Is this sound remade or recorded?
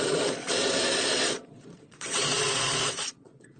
remade